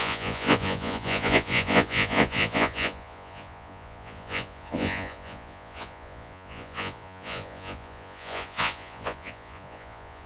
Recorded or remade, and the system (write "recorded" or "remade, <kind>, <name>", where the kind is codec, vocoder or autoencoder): remade, vocoder, Vocos